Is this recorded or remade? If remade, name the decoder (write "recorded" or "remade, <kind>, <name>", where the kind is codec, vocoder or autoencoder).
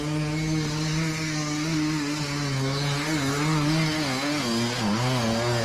recorded